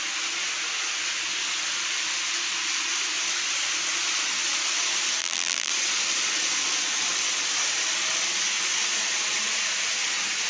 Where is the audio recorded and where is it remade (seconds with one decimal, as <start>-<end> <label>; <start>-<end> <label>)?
0.0-5.2 recorded; 5.2-5.7 remade; 5.7-10.5 recorded

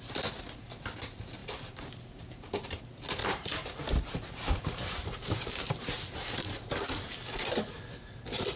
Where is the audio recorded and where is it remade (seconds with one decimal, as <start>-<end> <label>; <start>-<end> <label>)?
0.0-1.4 recorded; 1.4-2.8 remade; 2.8-3.2 recorded; 3.2-6.4 remade; 6.4-8.6 recorded

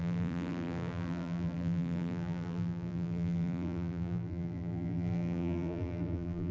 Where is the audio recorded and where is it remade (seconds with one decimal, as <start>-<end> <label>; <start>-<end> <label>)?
0.0-6.5 remade

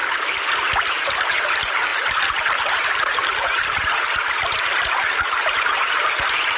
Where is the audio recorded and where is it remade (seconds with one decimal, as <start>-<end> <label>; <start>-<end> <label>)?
0.0-1.1 recorded; 1.1-6.6 remade